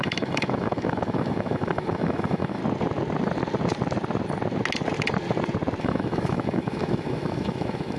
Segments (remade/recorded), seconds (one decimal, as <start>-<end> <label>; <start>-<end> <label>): 0.0-2.6 remade; 2.6-5.8 recorded; 5.8-8.0 remade